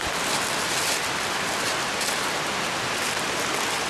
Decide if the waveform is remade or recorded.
recorded